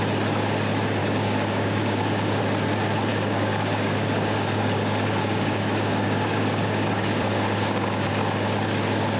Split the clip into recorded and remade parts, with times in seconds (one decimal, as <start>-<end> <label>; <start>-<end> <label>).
0.0-1.0 recorded; 1.0-2.4 remade; 2.4-3.1 recorded; 3.1-8.1 remade; 8.1-9.2 recorded